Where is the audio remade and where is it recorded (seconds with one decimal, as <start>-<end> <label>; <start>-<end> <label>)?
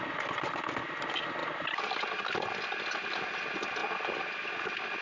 0.0-1.4 recorded; 1.4-2.0 remade; 2.0-3.8 recorded; 3.8-4.5 remade; 4.5-5.0 recorded